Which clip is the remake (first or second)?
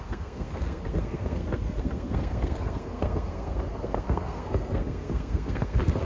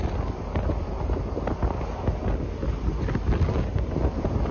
first